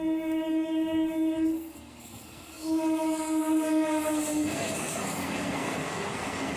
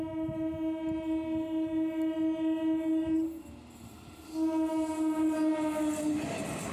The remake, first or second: first